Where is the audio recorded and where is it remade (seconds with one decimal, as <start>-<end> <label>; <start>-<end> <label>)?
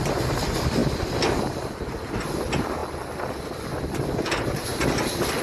0.0-5.4 recorded